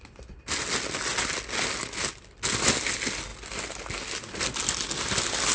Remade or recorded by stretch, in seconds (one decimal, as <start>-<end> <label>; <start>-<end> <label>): 0.0-5.5 recorded